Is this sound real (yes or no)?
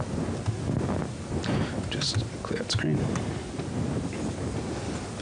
yes